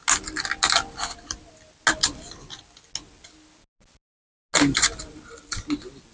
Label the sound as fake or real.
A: real